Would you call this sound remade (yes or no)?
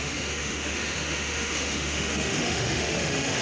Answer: yes